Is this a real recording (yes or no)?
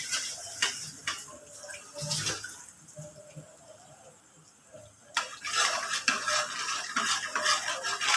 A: yes